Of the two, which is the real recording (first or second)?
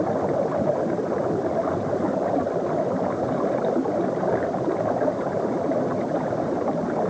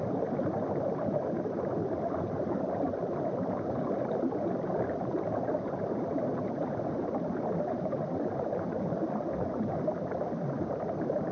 first